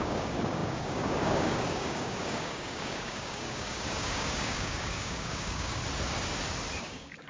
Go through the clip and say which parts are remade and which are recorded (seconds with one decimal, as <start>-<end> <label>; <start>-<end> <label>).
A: 0.0-5.8 remade; 5.8-6.8 recorded; 6.8-7.3 remade